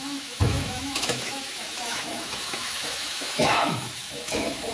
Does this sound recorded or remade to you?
remade